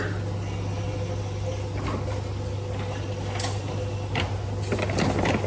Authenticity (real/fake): real